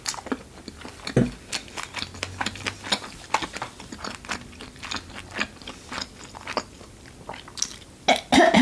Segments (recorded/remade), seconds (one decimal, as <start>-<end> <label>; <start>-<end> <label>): 0.0-8.6 recorded